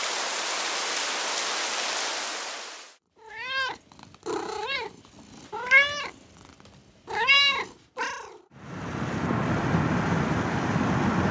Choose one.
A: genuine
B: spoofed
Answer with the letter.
A